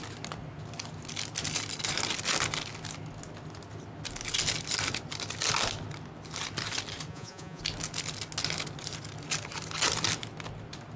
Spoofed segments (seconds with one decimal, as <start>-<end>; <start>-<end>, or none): 7.1-7.6